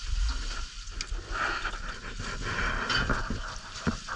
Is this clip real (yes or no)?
yes